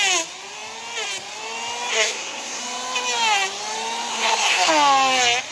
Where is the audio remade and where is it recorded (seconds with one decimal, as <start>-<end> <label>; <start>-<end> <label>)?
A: 0.0-1.9 recorded; 1.9-2.6 remade; 2.6-4.1 recorded; 4.1-4.7 remade; 4.7-5.5 recorded